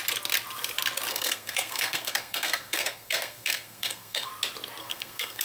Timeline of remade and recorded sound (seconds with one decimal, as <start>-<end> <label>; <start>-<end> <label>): 0.0-1.1 recorded; 1.1-4.3 remade; 4.3-4.8 recorded; 4.8-5.4 remade